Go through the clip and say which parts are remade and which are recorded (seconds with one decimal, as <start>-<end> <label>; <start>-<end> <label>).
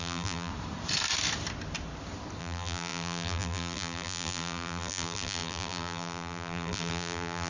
0.0-0.5 remade; 0.5-2.4 recorded; 2.4-7.5 remade